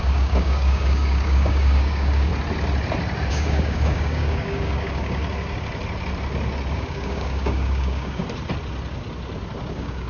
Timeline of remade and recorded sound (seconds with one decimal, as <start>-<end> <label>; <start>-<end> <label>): 0.0-2.3 remade; 2.3-3.3 recorded; 3.3-5.2 remade; 5.2-6.7 recorded; 6.7-8.2 remade; 8.2-9.7 recorded; 9.7-10.1 remade